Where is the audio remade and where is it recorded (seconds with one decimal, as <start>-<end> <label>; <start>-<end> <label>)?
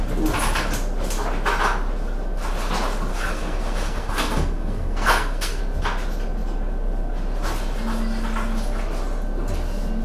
0.0-3.1 recorded; 3.1-5.6 remade; 5.6-10.0 recorded